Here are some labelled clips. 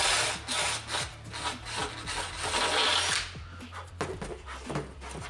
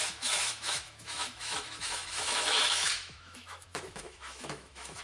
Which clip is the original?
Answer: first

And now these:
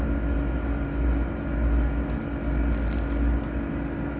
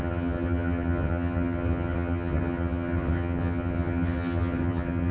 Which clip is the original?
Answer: first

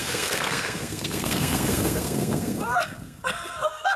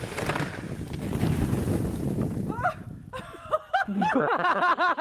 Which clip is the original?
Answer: second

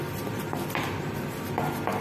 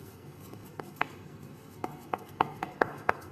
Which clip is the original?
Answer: first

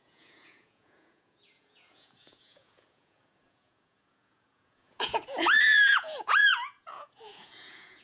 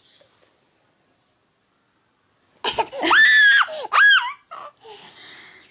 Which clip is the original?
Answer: second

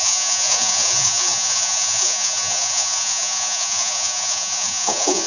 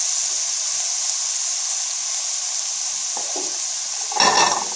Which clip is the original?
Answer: second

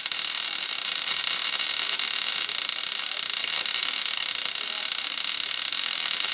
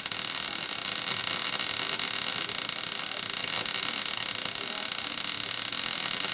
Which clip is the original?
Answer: second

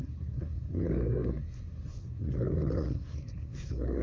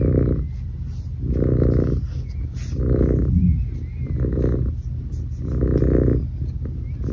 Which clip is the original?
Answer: second